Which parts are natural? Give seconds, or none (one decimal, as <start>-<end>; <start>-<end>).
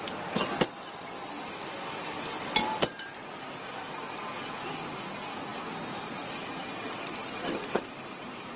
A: 0.0-8.6